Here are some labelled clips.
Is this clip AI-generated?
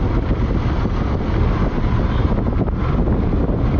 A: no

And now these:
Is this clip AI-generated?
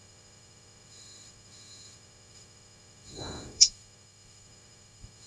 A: yes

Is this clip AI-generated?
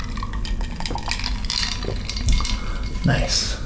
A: no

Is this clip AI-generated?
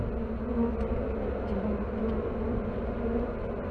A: no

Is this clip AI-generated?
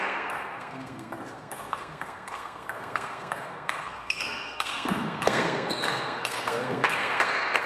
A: yes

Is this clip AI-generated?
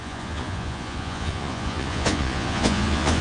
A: yes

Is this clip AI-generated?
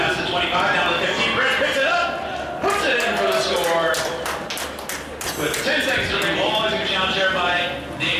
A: no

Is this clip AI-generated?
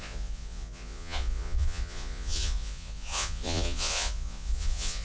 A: yes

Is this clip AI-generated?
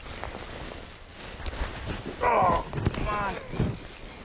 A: no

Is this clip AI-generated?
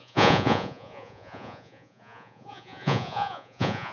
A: yes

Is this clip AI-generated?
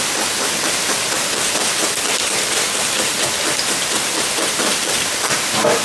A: no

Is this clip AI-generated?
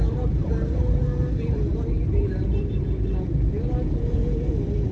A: yes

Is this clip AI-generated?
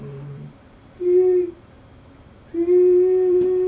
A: yes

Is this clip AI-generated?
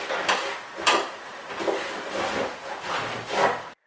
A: no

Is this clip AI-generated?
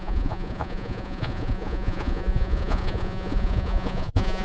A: yes